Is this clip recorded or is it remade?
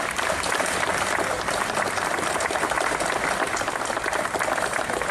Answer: recorded